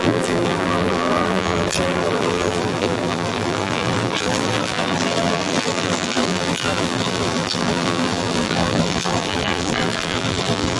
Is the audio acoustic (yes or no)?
no